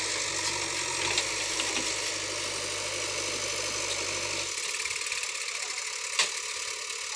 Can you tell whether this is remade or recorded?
recorded